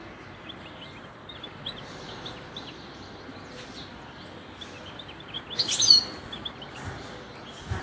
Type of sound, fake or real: real